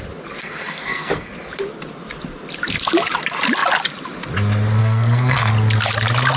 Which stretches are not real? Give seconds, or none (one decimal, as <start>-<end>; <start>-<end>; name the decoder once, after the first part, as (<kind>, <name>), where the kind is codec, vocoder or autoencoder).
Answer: 0.4-1.3 (codec, SNAC); 4.8-5.5